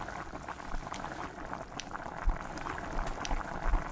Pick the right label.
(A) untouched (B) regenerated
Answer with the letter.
A